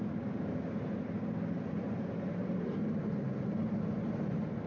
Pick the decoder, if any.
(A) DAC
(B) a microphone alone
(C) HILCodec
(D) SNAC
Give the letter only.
B